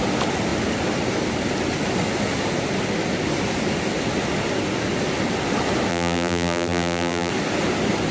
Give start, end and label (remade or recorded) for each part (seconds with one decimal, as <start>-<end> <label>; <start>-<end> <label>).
0.0-5.9 recorded; 5.9-7.3 remade; 7.3-8.1 recorded